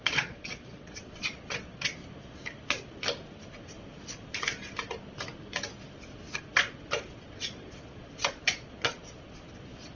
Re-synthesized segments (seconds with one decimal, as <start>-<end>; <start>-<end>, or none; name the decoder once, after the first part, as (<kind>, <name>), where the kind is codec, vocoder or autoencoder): 0.0-2.0 (vocoder, Vocos); 6.4-9.9